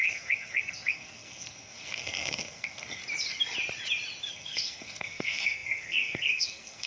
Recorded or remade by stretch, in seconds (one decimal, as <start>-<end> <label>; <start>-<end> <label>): 0.0-3.0 remade; 3.0-4.3 recorded; 4.3-6.9 remade